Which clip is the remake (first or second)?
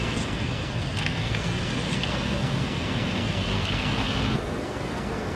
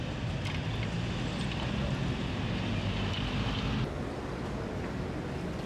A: first